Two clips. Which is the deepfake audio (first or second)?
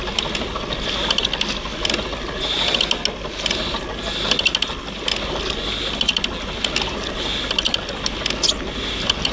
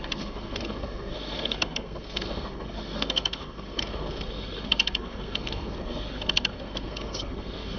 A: second